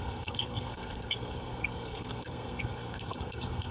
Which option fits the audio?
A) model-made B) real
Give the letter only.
A